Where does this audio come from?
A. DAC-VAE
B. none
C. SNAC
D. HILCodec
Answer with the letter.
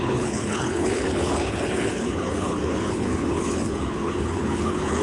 D